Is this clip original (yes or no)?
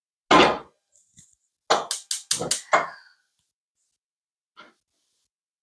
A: yes